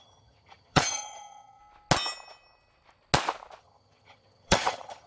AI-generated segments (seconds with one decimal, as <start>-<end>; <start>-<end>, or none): 0.0-1.6; 3.6-5.1